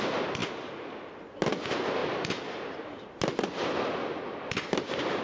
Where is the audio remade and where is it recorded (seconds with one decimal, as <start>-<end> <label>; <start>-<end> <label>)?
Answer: 0.0-5.2 recorded